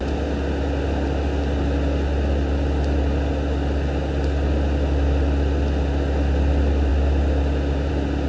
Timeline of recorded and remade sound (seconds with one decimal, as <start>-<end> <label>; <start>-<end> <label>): 0.0-8.3 recorded